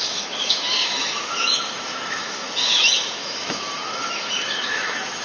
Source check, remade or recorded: remade